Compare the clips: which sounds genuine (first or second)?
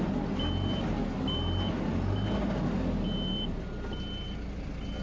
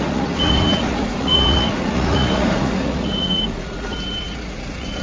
first